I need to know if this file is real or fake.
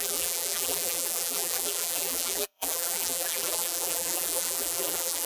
fake